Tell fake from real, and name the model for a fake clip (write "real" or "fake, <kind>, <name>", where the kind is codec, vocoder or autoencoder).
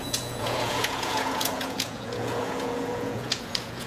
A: fake, vocoder, Vocos